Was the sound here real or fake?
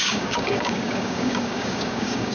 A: fake